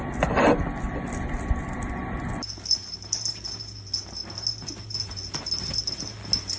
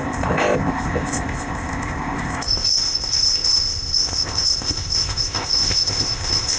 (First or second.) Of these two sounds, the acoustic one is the first